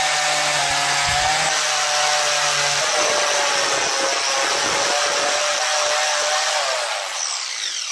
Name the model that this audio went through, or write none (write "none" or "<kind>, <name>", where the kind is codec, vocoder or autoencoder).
none